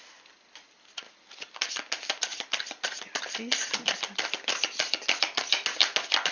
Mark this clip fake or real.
real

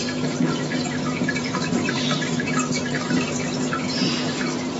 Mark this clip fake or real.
fake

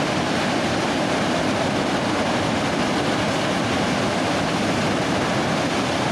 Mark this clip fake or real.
real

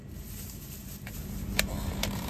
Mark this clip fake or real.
fake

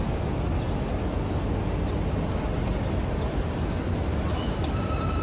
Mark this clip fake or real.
real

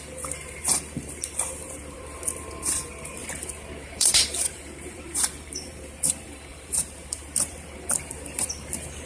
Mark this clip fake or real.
fake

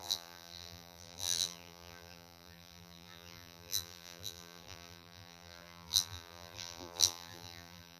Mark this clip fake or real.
fake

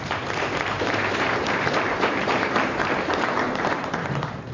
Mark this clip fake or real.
fake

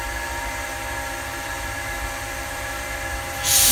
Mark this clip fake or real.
fake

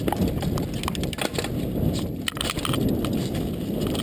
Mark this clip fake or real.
real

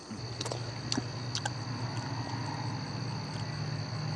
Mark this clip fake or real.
real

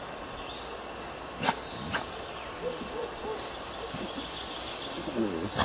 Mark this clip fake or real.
real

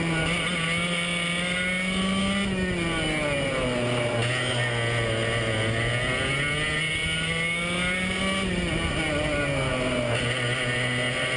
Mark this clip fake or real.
real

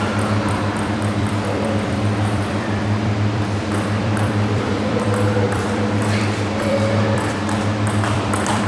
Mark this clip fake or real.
fake